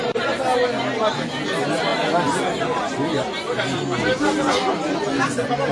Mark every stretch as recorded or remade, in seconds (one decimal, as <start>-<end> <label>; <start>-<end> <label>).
0.0-5.7 recorded